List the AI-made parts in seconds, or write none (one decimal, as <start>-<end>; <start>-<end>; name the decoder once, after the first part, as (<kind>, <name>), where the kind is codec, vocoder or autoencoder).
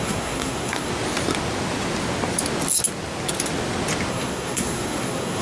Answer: 0.0-0.9 (codec, SNAC); 4.1-5.4